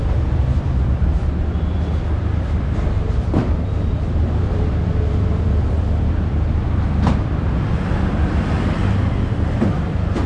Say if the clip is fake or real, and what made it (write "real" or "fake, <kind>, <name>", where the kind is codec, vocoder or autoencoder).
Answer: fake, vocoder, BigVGAN v2